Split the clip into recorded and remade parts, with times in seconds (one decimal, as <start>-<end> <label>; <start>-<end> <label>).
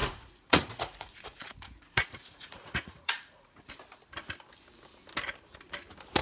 0.0-3.7 remade; 3.7-6.2 recorded